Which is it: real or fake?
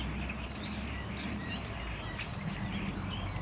real